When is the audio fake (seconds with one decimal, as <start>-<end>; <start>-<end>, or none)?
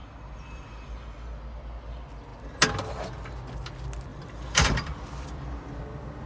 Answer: 0.0-0.9; 4.1-5.8